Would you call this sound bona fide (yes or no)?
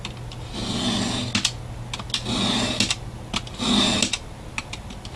yes